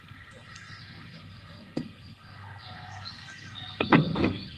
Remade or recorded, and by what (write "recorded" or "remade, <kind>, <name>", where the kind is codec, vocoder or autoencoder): remade, codec, SNAC